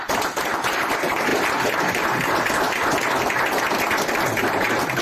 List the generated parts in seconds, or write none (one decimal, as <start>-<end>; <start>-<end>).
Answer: none